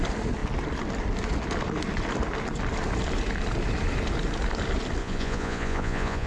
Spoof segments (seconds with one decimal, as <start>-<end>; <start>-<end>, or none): 5.0-6.3